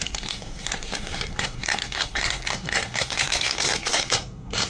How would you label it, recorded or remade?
remade